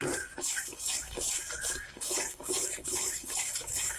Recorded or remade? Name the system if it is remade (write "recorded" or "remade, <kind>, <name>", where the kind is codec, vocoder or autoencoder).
remade, codec, DAC